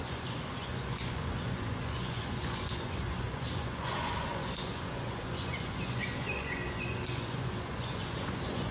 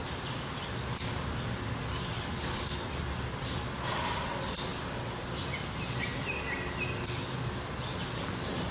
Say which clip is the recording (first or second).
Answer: second